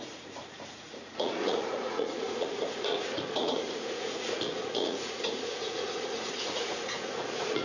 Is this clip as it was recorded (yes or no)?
no